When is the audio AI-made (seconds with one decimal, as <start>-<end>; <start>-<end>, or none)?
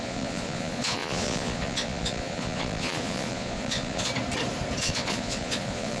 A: 0.0-4.1; 4.8-6.0